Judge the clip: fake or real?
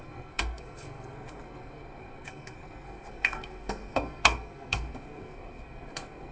fake